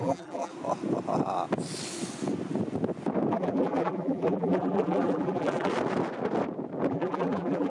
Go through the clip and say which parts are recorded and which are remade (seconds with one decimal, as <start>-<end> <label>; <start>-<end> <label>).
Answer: 0.0-0.5 remade; 0.5-3.3 recorded; 3.3-5.7 remade; 5.7-6.9 recorded; 6.9-7.7 remade